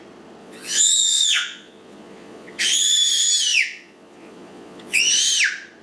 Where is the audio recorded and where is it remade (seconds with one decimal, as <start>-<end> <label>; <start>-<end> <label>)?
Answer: 0.0-0.4 recorded; 0.4-2.6 remade; 2.6-3.5 recorded; 3.5-5.1 remade; 5.1-5.8 recorded